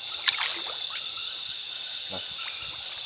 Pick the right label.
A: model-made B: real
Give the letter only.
B